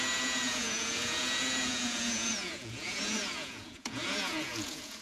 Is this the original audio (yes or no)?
no